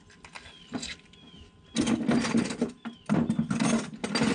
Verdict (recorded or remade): recorded